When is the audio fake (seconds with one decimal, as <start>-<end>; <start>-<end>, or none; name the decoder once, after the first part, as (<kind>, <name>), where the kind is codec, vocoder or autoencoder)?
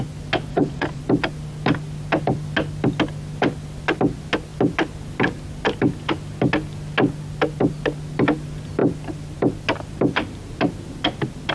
0.5-1.0 (vocoder, Vocos)